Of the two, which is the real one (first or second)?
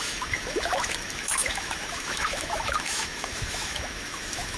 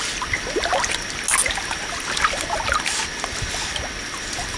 second